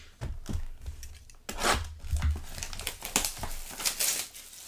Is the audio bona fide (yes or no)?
yes